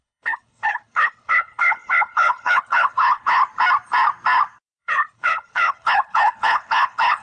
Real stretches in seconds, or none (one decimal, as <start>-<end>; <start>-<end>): 3.4-4.8